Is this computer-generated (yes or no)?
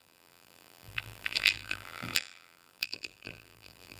yes